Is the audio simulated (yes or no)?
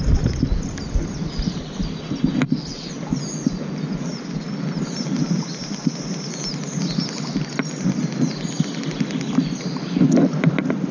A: no